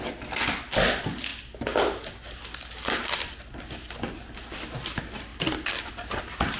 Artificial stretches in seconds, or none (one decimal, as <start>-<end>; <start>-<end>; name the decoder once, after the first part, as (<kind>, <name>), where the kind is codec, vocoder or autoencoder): 5.3-5.8 (vocoder, BigVGAN v2)